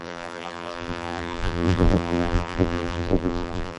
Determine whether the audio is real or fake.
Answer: fake